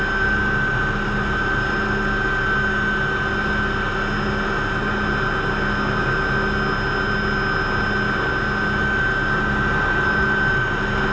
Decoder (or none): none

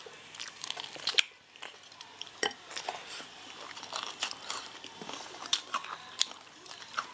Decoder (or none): vocoder, BigVGAN v2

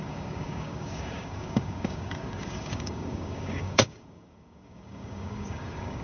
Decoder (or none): codec, DAC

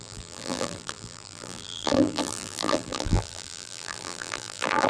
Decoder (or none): vocoder, BigVGAN v2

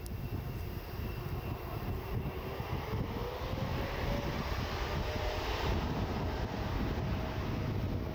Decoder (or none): none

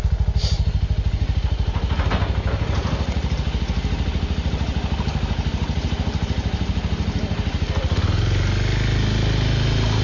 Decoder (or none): none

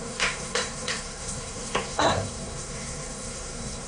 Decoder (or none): codec, SNAC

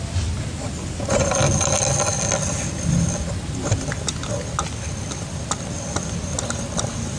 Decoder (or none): none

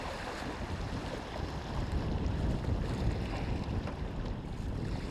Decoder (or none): none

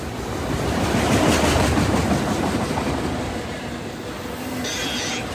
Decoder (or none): none